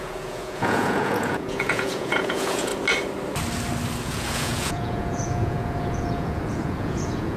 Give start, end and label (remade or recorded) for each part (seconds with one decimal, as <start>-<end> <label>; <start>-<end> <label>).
0.0-2.7 remade; 2.7-4.0 recorded; 4.0-7.4 remade